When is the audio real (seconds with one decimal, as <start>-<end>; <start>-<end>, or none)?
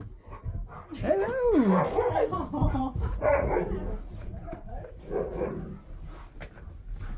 0.0-2.8; 3.5-4.1; 5.5-7.2